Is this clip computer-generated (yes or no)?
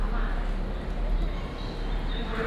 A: no